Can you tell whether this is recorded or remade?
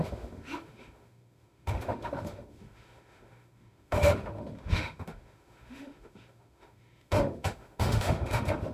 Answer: remade